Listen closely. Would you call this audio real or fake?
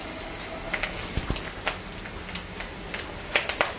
real